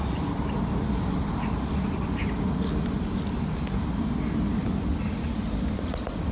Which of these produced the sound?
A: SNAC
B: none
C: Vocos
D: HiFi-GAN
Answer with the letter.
B